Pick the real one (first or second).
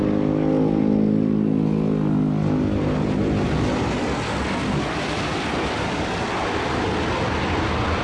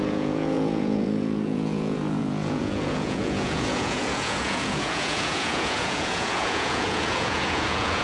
first